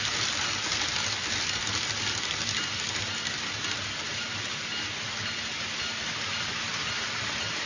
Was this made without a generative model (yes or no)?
yes